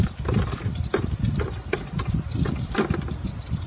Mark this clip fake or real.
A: real